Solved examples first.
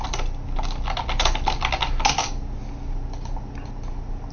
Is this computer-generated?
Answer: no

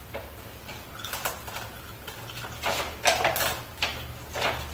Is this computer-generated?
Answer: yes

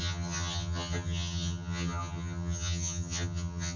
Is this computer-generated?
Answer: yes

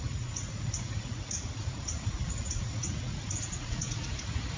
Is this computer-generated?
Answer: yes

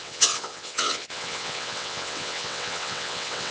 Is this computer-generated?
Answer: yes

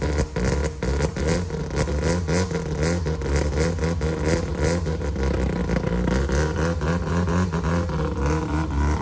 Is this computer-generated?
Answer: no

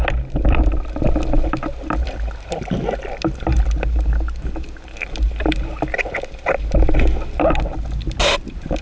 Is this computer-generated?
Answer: no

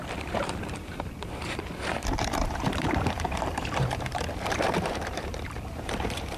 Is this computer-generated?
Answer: yes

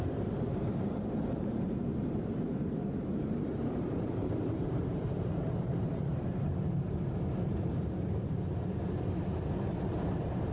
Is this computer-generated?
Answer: yes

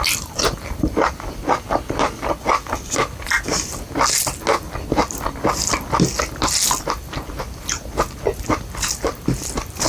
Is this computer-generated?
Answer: no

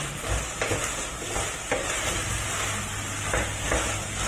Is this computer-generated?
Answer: no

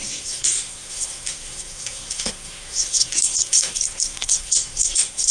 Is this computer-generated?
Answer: yes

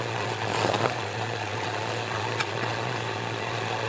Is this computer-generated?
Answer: yes